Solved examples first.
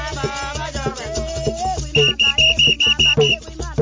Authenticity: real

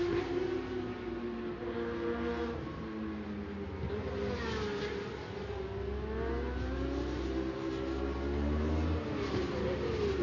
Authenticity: real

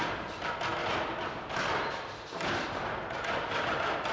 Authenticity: real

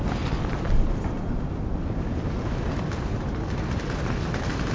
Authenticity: real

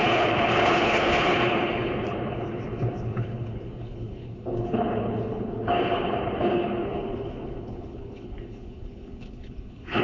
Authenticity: fake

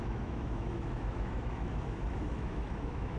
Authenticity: fake